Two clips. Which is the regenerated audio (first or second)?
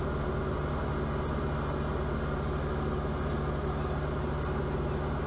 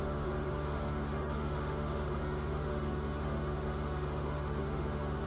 second